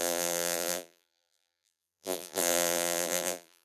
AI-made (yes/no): yes